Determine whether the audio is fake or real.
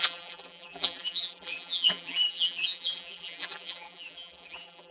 fake